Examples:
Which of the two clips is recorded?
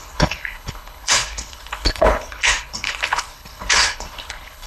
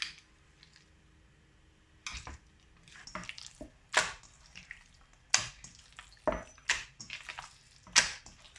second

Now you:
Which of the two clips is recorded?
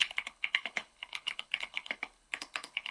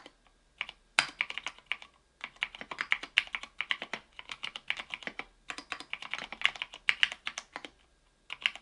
second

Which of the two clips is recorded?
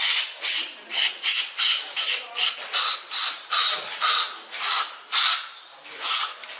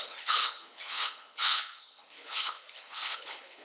first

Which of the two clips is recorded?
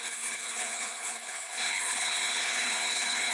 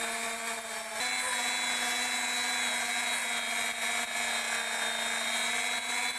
second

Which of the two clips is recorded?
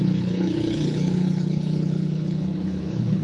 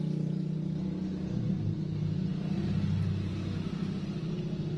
second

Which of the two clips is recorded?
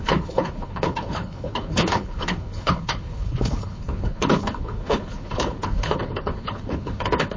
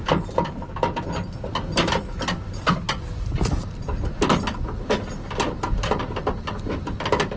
second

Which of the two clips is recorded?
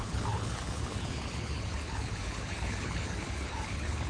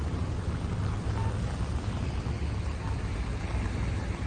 second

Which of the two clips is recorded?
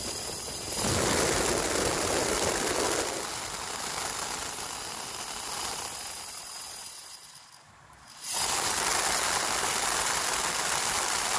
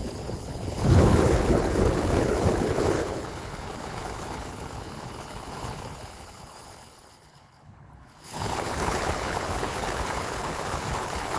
first